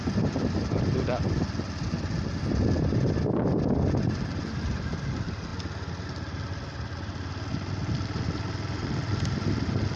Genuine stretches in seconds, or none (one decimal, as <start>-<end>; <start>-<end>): 5.5-7.9